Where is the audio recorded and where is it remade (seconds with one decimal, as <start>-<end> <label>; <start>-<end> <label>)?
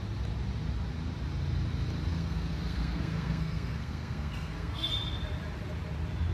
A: 0.0-2.1 recorded; 2.1-4.9 remade; 4.9-6.3 recorded